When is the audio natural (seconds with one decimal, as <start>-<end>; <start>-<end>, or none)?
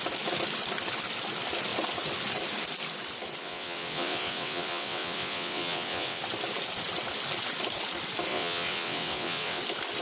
0.0-3.4; 6.2-8.3; 9.6-10.0